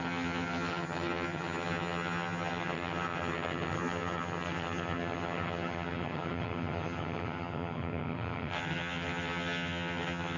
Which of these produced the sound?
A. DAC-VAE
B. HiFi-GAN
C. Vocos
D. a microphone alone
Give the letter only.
B